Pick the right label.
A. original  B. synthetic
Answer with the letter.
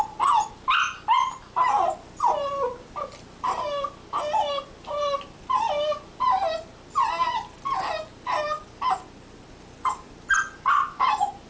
A